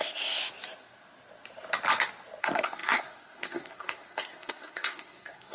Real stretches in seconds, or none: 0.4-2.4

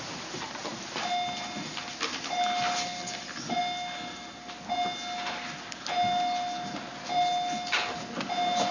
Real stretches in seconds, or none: 0.0-8.7

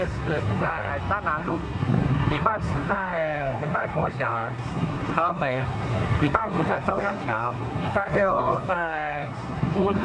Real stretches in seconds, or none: 0.9-1.4

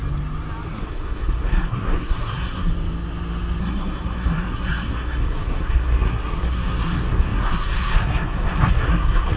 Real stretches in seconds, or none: 0.0-0.7; 2.7-3.6

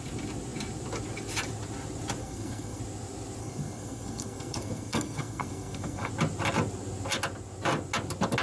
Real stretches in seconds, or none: 0.0-2.2; 2.8-3.4; 6.1-8.4

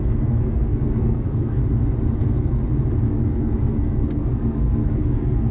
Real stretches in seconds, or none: 1.6-2.2; 2.6-3.1